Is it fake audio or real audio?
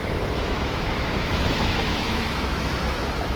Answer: fake